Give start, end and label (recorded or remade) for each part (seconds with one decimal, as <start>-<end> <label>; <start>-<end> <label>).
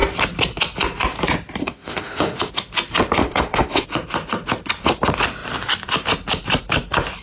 0.0-1.6 recorded; 1.6-2.5 remade; 2.5-3.2 recorded; 3.2-3.8 remade; 3.8-7.2 recorded